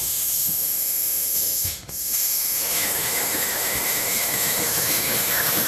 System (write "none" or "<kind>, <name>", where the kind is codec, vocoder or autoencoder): autoencoder, DAC-VAE